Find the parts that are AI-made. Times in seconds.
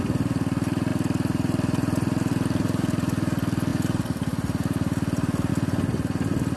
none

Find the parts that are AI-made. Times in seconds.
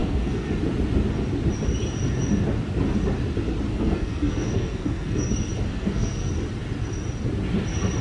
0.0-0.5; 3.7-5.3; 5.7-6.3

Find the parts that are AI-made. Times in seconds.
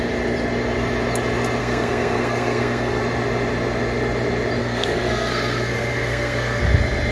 1.6-3.0; 4.6-6.6